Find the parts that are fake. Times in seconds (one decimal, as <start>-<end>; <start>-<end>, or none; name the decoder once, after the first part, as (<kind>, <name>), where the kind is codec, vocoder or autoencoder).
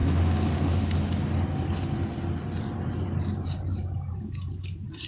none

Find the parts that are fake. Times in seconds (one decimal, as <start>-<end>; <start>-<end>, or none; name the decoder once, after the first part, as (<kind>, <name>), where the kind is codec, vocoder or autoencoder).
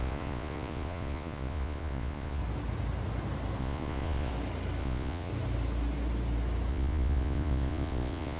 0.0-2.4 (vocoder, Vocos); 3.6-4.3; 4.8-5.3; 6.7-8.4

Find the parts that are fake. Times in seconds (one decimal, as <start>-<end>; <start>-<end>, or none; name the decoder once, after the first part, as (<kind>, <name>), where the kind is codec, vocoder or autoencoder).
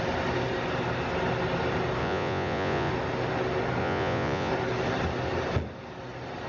2.0-2.9 (vocoder, Vocos); 3.8-4.5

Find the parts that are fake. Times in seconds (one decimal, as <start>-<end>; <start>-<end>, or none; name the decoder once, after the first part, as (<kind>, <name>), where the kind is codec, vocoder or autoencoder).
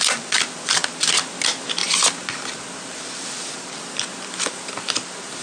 none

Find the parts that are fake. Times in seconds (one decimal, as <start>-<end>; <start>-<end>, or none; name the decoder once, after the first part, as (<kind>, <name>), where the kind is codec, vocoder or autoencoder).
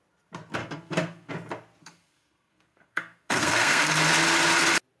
0.6-1.3 (codec, SNAC); 1.8-3.9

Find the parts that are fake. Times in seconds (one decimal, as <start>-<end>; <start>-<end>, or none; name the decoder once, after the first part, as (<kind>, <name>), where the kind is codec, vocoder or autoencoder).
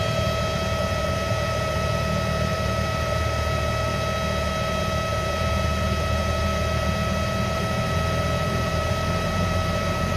0.0-3.9 (vocoder, BigVGAN v2); 4.4-10.2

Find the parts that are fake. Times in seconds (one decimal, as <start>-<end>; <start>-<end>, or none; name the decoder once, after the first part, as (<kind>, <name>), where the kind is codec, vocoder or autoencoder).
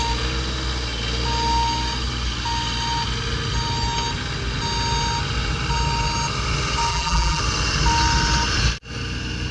6.9-7.4 (vocoder, BigVGAN v2)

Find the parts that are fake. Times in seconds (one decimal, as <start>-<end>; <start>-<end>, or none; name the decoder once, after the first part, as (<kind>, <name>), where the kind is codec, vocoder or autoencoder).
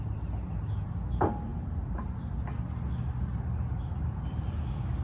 1.5-2.3 (vocoder, BigVGAN v2); 3.9-4.6